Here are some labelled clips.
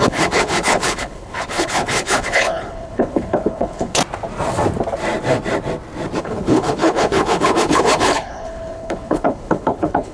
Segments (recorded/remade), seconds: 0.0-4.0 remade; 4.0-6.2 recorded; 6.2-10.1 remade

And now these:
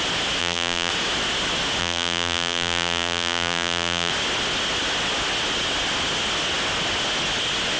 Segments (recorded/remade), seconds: 0.0-0.4 recorded; 0.4-0.9 remade; 0.9-1.8 recorded; 1.8-4.1 remade; 4.1-7.8 recorded

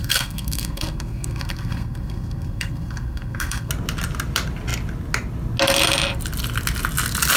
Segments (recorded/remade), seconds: 0.0-3.7 remade; 3.7-7.4 recorded